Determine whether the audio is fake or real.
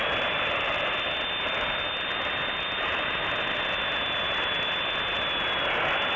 real